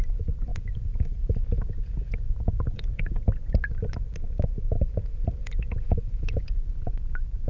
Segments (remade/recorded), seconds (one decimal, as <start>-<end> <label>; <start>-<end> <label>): 0.0-0.5 recorded; 0.5-3.2 remade; 3.2-5.4 recorded; 5.4-6.7 remade; 6.7-7.5 recorded

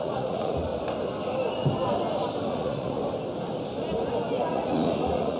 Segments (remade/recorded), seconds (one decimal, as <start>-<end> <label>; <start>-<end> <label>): 0.0-0.7 remade; 0.7-2.5 recorded; 2.5-3.0 remade; 3.0-4.5 recorded; 4.5-5.4 remade

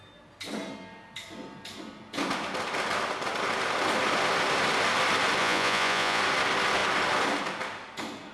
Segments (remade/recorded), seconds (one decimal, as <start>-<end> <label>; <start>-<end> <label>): 0.0-5.4 recorded; 5.4-6.2 remade; 6.2-8.3 recorded

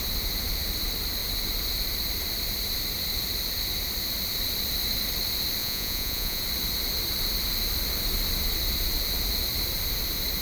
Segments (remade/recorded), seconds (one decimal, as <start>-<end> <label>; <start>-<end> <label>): 0.0-5.6 recorded; 5.6-6.4 remade; 6.4-10.4 recorded